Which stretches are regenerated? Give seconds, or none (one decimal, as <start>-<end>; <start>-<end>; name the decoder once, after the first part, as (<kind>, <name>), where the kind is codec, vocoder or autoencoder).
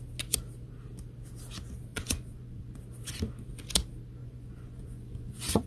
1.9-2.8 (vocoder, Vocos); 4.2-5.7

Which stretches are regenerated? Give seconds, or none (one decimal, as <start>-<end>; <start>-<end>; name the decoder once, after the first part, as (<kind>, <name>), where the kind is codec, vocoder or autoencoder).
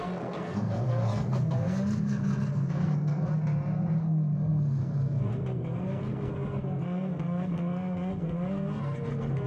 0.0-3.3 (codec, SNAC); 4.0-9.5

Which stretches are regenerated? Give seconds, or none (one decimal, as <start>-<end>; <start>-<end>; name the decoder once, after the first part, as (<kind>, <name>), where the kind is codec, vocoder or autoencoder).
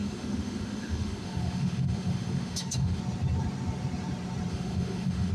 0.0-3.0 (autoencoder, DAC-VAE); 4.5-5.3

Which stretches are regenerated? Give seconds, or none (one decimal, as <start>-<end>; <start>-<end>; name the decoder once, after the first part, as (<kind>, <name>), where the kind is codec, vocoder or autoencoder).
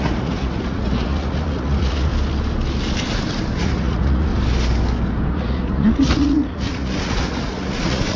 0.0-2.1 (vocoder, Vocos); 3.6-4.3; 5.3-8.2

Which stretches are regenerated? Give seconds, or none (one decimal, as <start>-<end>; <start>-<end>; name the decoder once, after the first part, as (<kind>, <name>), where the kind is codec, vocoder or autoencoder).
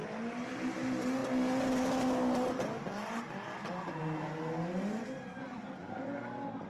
none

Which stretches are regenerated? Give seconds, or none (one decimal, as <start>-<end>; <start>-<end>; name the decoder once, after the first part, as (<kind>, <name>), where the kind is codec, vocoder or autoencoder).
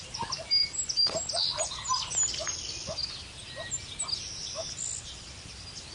0.6-1.3 (vocoder, BigVGAN v2)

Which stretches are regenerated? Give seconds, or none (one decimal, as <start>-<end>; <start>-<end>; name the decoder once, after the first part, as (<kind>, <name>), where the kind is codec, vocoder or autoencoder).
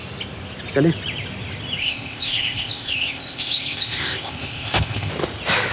1.8-5.1 (codec, ZipCodec)